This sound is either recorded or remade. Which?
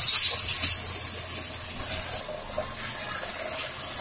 recorded